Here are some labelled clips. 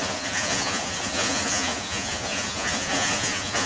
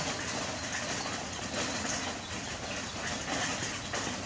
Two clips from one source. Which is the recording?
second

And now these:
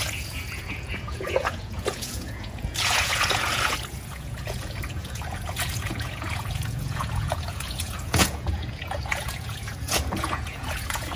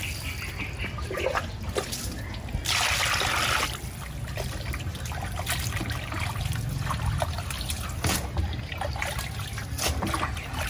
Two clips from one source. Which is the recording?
second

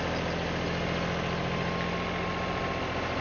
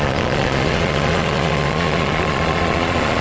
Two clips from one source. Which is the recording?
first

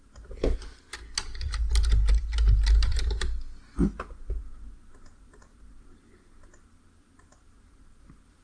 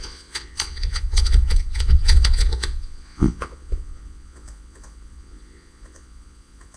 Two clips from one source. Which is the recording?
first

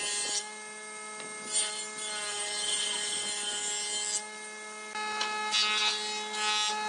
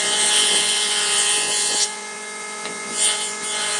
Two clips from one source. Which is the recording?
first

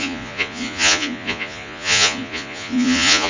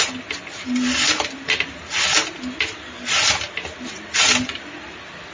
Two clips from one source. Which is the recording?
second